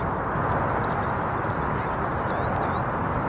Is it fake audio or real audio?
real